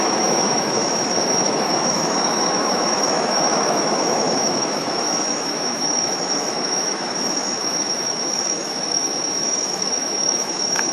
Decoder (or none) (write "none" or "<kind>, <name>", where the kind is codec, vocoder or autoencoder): autoencoder, DAC-VAE